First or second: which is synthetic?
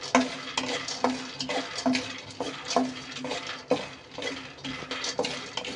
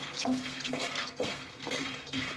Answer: second